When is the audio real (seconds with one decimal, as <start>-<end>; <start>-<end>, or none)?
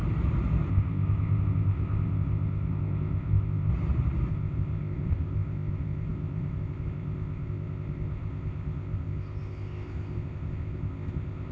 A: 0.0-0.7; 3.7-4.3